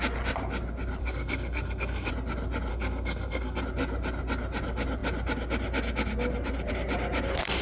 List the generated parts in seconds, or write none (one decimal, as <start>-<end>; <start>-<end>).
1.0-2.1; 2.7-3.6

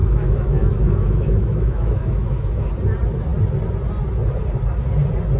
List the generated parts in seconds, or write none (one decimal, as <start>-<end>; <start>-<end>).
0.0-2.7

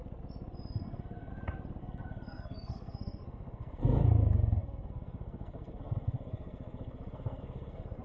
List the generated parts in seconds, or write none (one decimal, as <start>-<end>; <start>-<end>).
0.7-1.3; 1.8-8.0

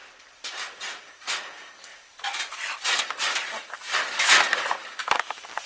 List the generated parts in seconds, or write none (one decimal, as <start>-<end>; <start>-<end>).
0.0-1.0; 1.9-3.0

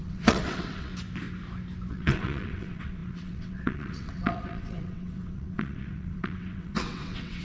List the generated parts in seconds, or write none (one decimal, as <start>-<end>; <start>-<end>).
0.0-0.9; 1.9-7.4